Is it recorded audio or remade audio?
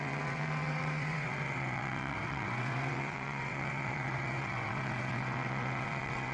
remade